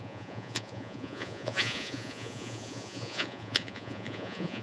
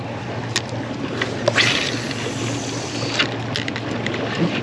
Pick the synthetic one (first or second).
first